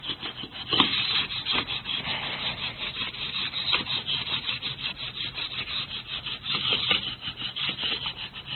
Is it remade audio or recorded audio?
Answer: recorded